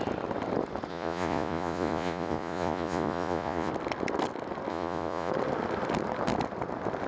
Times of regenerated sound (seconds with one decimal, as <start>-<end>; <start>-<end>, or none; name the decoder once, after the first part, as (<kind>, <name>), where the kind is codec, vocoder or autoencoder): 0.9-3.7 (vocoder, Vocos); 4.7-5.3